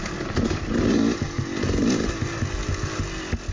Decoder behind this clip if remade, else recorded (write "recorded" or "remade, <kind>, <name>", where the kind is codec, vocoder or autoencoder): recorded